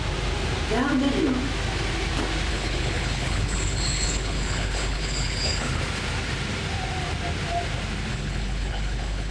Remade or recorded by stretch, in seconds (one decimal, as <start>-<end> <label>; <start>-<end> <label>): 0.0-2.5 recorded; 2.5-5.8 remade; 5.8-8.1 recorded; 8.1-9.3 remade